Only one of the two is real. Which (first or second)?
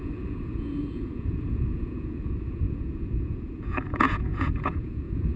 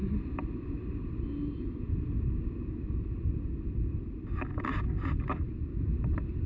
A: second